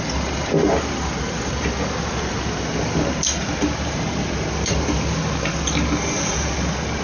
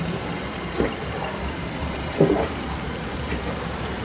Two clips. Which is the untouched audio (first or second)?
first